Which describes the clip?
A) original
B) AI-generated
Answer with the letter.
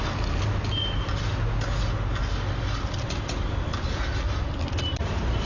A